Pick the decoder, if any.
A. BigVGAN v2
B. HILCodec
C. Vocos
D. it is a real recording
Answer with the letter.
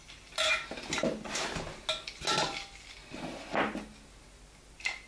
D